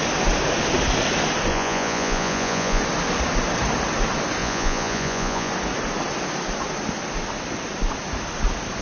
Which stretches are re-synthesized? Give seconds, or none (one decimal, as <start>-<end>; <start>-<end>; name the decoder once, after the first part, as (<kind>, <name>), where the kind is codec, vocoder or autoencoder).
1.5-2.8 (vocoder, Vocos); 4.4-5.5